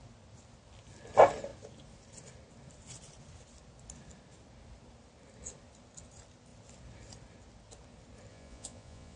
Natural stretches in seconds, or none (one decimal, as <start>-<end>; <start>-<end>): 0.0-8.3

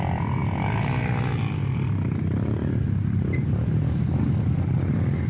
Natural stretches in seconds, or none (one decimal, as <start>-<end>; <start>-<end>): 0.0-5.3